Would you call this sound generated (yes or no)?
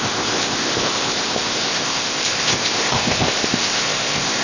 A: yes